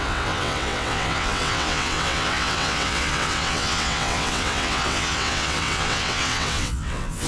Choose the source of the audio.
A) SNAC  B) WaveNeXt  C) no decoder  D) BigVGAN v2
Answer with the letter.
B